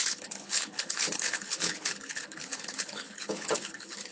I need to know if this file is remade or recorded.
remade